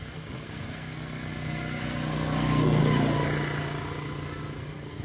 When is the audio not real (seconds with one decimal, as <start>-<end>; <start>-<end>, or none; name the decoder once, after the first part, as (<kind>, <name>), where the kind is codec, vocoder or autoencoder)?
0.0-2.8 (codec, SNAC); 4.6-5.0